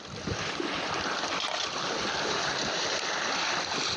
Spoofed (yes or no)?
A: yes